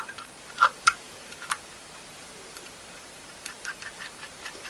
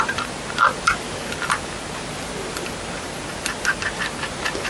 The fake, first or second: first